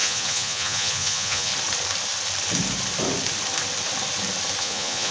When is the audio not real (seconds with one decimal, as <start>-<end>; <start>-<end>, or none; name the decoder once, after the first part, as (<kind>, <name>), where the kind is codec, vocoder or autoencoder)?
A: 0.0-1.5 (vocoder, Vocos); 4.6-5.1